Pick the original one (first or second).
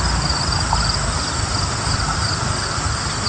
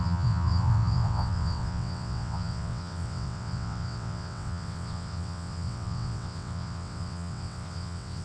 first